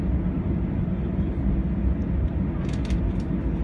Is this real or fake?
real